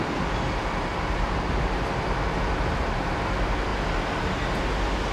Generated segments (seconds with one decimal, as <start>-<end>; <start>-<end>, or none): 0.9-2.2; 2.8-3.3